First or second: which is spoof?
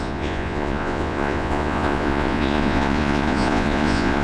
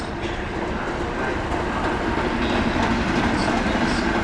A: first